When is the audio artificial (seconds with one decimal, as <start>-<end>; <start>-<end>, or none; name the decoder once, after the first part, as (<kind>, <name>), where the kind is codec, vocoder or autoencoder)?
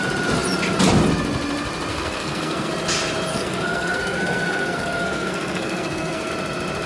1.9-2.7 (codec, SNAC); 3.3-6.3